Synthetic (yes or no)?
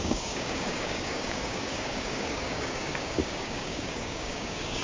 yes